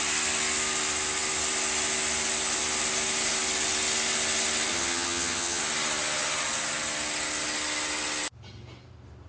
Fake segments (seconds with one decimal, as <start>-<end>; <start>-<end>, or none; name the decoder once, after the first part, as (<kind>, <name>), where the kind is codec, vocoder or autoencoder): 4.7-5.6 (vocoder, HiFi-GAN)